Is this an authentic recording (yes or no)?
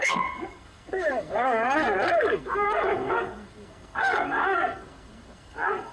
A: no